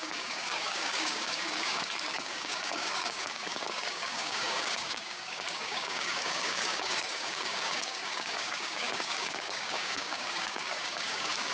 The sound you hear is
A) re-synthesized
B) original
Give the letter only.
A